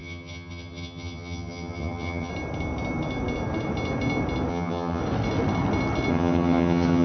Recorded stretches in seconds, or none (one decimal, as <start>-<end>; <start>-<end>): 2.3-4.5; 5.0-6.1